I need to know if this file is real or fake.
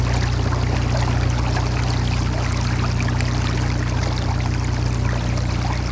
real